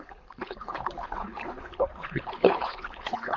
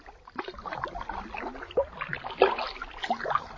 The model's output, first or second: first